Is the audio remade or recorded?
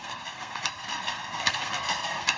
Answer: remade